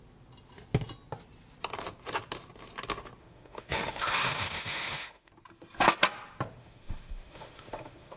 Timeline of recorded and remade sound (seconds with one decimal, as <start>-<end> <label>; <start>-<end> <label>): 0.0-3.2 recorded; 3.2-5.3 remade; 5.3-6.6 recorded; 6.6-8.2 remade